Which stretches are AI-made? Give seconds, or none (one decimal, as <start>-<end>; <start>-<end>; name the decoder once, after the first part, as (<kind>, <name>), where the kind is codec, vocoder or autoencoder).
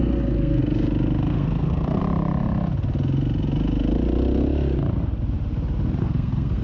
0.0-0.6 (codec, SNAC); 1.3-2.0; 6.0-6.6